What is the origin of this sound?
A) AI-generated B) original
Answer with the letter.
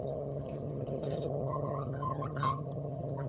A